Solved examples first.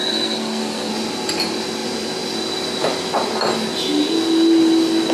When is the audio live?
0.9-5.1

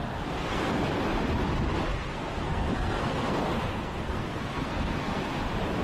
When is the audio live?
0.7-1.9; 5.2-5.8

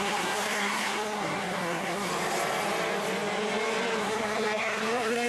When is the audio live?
2.1-4.0

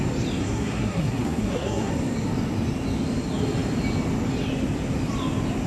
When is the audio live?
0.0-0.4; 1.9-5.7

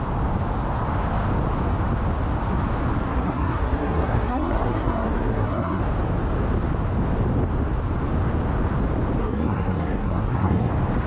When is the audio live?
0.0-3.1; 5.8-9.2; 10.7-11.1